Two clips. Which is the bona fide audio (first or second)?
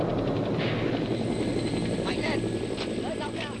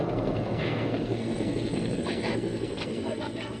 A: first